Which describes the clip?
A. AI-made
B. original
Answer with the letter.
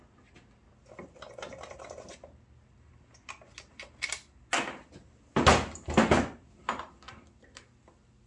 B